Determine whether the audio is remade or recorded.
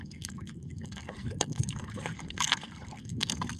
remade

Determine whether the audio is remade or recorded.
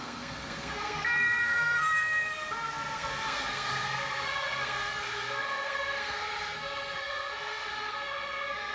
remade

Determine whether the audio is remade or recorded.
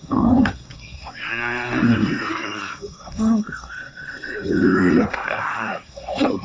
remade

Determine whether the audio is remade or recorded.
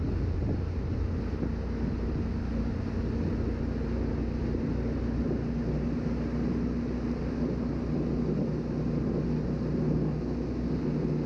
recorded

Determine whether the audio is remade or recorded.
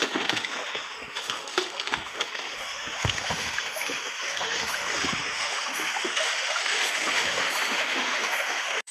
remade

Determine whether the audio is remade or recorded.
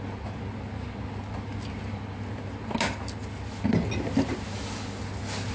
recorded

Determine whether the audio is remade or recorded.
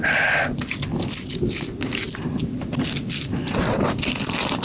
recorded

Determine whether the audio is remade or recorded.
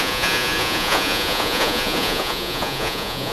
remade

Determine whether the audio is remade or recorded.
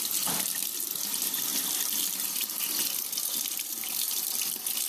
recorded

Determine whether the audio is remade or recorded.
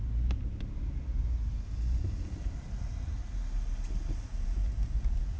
recorded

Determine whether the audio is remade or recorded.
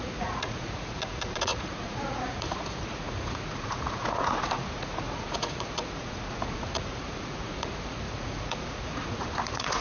remade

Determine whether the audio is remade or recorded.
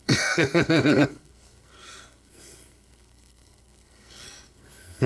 remade